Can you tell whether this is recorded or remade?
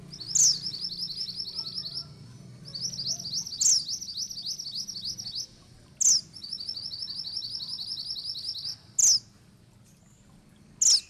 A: recorded